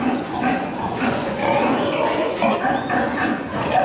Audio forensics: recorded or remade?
remade